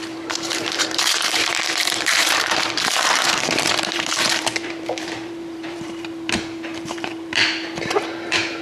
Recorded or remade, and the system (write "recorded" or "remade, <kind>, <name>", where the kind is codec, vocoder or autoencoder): remade, vocoder, BigVGAN v2